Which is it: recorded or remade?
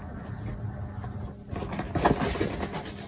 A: recorded